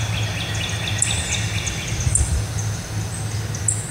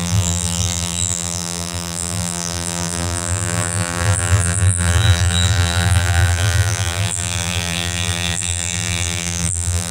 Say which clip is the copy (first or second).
second